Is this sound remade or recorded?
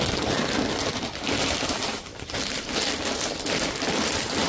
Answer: recorded